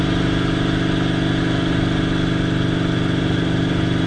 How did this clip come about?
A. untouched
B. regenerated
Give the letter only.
A